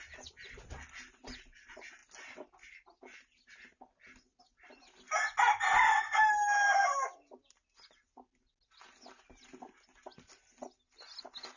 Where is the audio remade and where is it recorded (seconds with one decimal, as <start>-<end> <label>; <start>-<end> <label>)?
0.0-11.6 recorded